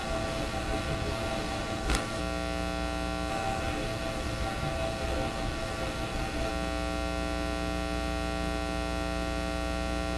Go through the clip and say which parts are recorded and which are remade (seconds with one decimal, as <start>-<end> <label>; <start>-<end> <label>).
0.0-2.2 remade; 2.2-3.3 recorded; 3.3-6.5 remade; 6.5-10.2 recorded